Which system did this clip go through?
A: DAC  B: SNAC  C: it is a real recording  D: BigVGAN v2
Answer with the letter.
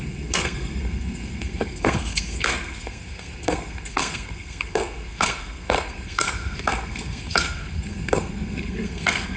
B